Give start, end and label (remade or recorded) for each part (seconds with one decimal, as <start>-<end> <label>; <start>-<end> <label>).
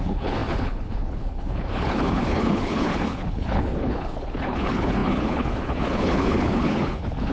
0.0-7.3 remade